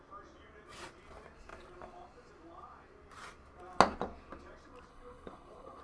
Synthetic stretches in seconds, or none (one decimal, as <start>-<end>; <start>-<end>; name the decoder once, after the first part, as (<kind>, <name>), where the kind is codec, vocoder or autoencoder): 4.9-5.8 (codec, HILCodec)